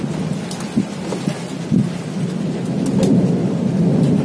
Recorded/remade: recorded